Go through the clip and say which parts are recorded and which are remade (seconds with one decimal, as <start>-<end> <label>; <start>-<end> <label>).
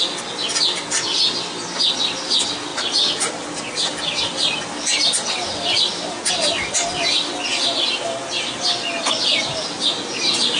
0.0-10.6 recorded